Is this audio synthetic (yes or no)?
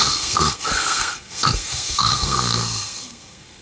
yes